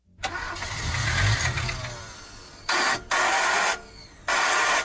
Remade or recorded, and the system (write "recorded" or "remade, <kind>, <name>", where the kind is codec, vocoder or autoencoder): recorded